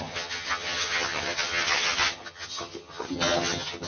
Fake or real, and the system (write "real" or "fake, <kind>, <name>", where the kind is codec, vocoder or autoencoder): fake, vocoder, HiFi-GAN